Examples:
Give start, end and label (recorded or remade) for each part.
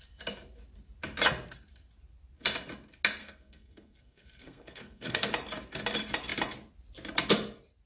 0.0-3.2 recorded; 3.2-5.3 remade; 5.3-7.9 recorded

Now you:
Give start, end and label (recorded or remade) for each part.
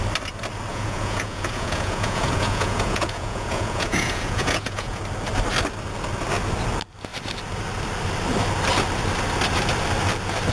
0.0-0.7 recorded; 0.7-5.0 remade; 5.0-10.5 recorded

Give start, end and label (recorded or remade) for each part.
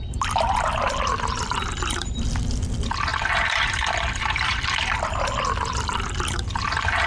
0.0-3.1 recorded; 3.1-5.1 remade; 5.1-7.1 recorded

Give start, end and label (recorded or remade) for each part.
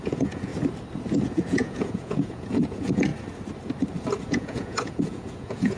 0.0-0.5 remade; 0.5-1.1 recorded; 1.1-3.1 remade; 3.1-4.2 recorded; 4.2-5.8 remade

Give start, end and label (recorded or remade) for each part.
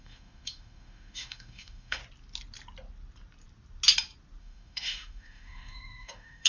0.0-2.0 remade; 2.0-4.4 recorded; 4.4-6.5 remade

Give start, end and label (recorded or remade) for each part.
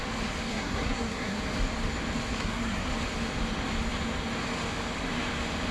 0.0-0.5 recorded; 0.5-1.4 remade; 1.4-2.3 recorded; 2.3-2.9 remade; 2.9-5.7 recorded